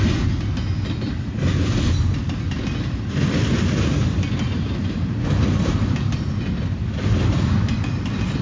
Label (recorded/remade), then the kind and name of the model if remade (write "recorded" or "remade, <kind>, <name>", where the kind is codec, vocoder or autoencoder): recorded